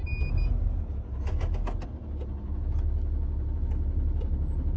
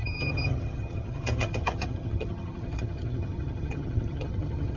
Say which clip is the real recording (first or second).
first